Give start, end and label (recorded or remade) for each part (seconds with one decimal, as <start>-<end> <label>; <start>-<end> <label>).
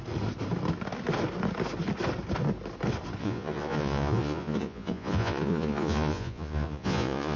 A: 0.0-3.2 recorded; 3.2-7.4 remade